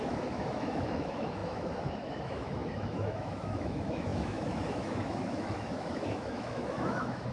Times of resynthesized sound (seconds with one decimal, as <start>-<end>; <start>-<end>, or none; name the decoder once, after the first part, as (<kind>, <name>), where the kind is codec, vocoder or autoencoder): 0.0-7.3 (autoencoder, DAC-VAE)